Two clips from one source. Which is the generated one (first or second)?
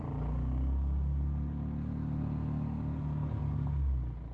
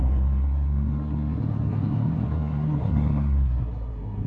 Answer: second